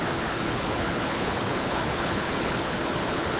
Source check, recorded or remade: remade